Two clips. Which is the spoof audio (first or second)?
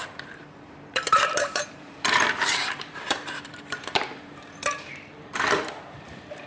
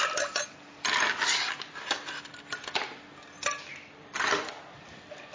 first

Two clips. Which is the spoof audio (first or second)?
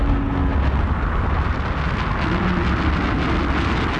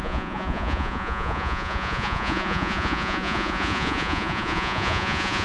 second